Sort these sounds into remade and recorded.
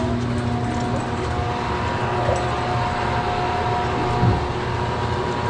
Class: recorded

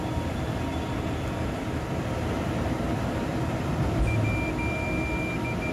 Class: recorded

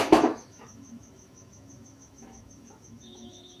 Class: remade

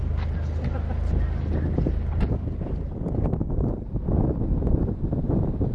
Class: recorded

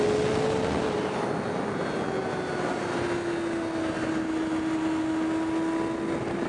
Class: recorded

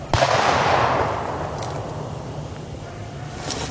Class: recorded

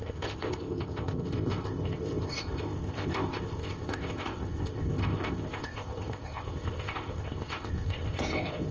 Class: remade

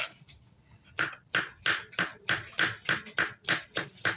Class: recorded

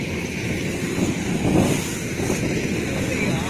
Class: recorded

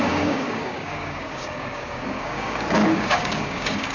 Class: remade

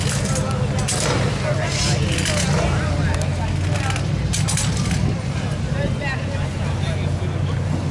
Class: recorded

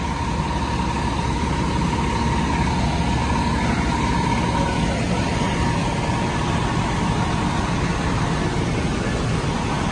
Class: recorded